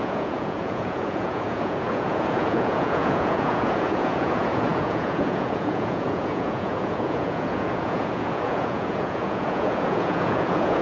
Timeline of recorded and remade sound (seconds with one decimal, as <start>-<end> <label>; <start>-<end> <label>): 0.0-10.8 remade